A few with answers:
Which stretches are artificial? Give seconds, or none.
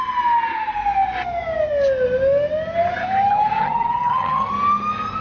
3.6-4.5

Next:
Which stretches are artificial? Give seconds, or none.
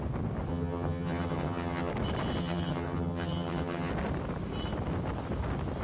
0.5-1.9; 2.4-3.9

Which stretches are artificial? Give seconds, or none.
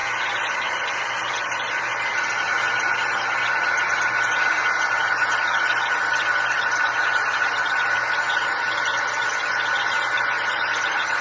none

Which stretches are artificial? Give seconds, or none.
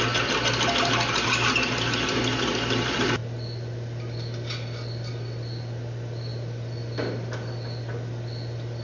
none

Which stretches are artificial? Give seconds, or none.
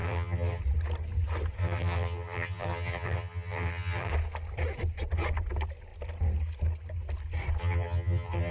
0.0-0.6; 1.6-4.1; 7.6-8.5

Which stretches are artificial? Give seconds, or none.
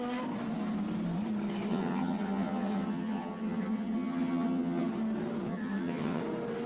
1.7-4.9; 5.5-6.2